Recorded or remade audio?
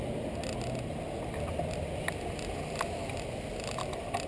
recorded